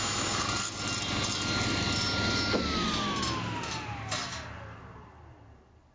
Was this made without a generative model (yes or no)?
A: yes